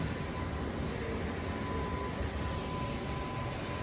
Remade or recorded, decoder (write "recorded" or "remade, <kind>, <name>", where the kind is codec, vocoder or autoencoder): recorded